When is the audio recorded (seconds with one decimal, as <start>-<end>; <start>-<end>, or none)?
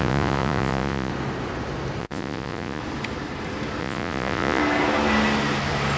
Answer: 1.1-2.0; 2.8-3.8; 4.6-6.0